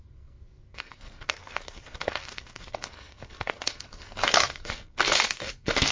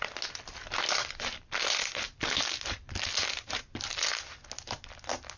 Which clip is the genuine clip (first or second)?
second